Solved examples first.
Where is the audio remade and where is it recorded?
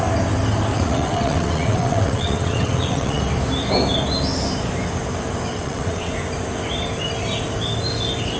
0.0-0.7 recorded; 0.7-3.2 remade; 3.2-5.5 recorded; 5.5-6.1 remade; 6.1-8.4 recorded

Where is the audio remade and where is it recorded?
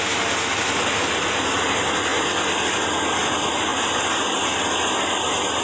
0.0-5.6 recorded